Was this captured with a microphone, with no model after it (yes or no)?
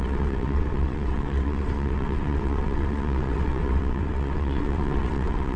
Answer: no